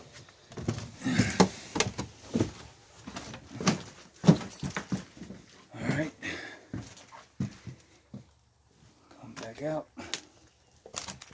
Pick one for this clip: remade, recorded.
recorded